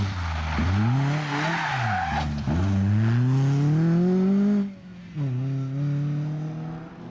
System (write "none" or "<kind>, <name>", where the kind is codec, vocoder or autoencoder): none